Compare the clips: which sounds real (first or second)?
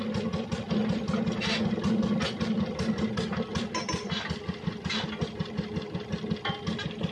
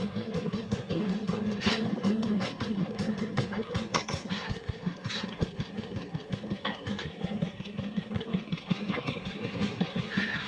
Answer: first